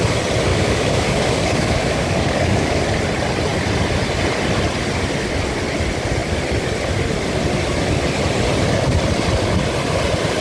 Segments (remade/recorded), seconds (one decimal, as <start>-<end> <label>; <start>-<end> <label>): 0.0-0.5 recorded; 0.5-2.8 remade; 2.8-10.4 recorded